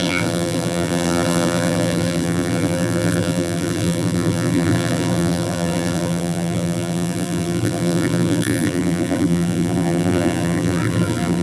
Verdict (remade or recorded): remade